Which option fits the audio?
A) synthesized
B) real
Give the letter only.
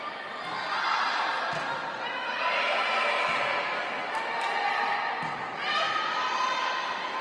B